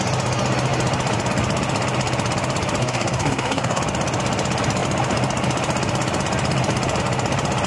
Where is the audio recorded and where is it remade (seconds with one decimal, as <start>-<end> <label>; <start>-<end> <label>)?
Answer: 0.0-2.8 recorded; 2.8-3.8 remade; 3.8-7.7 recorded